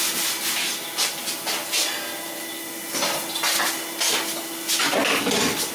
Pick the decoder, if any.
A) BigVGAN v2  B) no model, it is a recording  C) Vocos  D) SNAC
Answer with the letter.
B